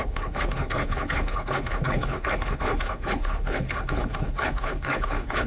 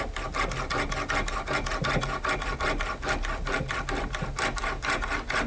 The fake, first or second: first